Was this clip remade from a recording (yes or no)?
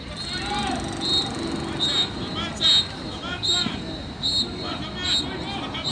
no